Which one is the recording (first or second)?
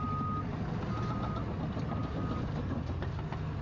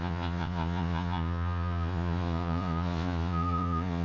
first